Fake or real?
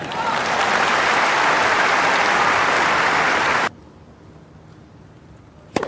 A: fake